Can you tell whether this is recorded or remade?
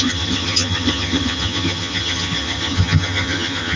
remade